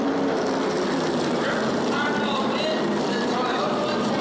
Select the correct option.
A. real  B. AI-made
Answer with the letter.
B